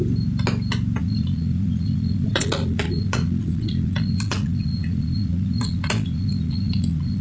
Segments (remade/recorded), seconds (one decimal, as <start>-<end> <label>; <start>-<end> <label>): 0.0-1.0 recorded; 1.0-7.2 remade

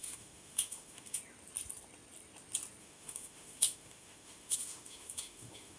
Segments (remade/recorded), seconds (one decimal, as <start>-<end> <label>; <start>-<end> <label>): 0.0-1.2 remade; 1.2-2.8 recorded; 2.8-5.8 remade